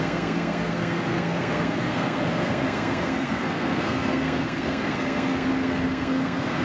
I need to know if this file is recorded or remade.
remade